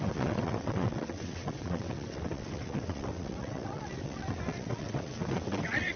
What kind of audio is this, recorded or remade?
remade